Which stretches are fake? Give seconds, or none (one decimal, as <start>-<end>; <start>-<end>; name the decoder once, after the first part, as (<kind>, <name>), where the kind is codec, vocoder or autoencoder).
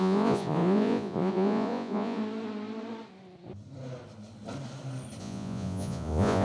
0.0-2.2 (vocoder, Vocos); 5.2-6.4